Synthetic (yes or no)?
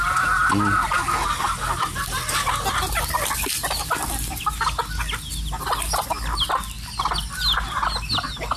no